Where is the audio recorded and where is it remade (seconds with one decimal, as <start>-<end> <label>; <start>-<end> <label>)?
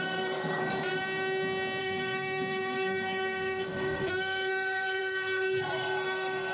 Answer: 0.0-0.6 remade; 0.6-1.8 recorded; 1.8-6.5 remade